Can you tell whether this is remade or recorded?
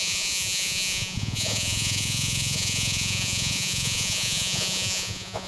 remade